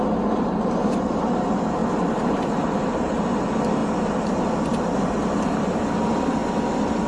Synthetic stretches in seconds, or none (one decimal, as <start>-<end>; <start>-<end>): none